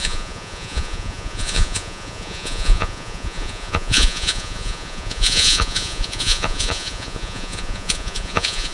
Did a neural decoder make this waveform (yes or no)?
yes